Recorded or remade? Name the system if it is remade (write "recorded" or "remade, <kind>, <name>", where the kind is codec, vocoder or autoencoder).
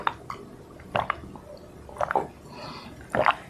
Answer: recorded